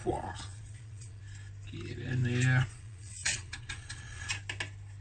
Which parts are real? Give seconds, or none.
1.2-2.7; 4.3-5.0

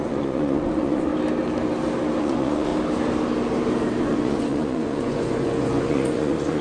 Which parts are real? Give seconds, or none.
1.1-2.2; 2.7-4.0